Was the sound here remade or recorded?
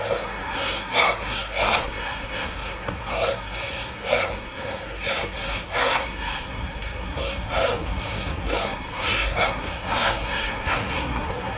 remade